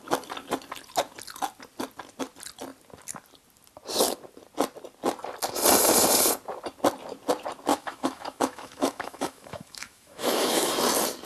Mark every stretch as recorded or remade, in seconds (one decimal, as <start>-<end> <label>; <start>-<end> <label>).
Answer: 0.0-7.7 recorded; 7.7-10.7 remade; 10.7-11.3 recorded